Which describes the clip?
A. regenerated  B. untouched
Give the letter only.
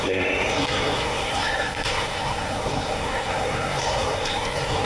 A